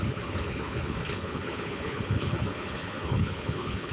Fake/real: fake